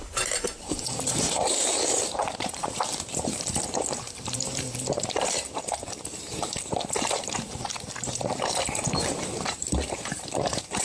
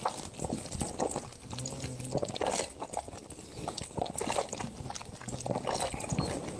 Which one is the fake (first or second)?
first